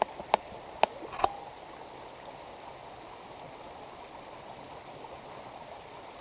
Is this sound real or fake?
real